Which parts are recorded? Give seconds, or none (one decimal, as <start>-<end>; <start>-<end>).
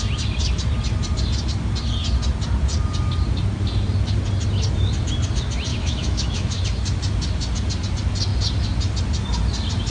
0.0-5.7; 6.6-9.9